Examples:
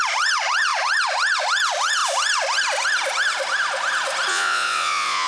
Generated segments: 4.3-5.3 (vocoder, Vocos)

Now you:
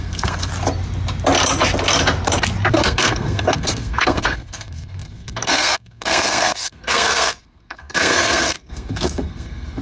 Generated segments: 0.0-0.5 (codec, SNAC); 2.7-9.8